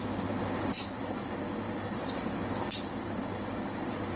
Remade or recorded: recorded